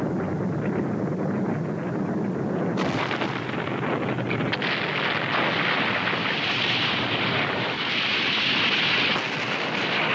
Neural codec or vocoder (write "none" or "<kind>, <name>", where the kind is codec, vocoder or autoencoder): none